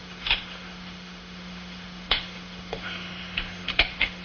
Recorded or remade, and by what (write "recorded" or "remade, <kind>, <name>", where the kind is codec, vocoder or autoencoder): remade, autoencoder, DAC-VAE